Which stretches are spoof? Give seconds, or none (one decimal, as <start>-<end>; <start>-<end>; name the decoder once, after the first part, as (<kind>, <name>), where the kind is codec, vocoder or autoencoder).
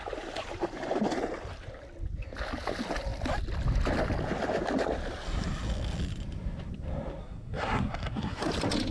7.2-8.5 (codec, SNAC)